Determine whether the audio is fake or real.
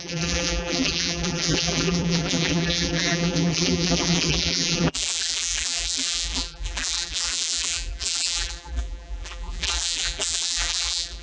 fake